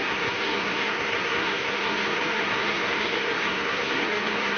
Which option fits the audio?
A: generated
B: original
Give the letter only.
A